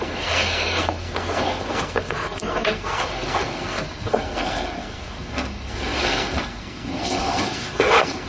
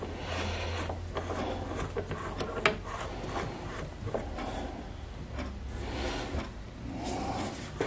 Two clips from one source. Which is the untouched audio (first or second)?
second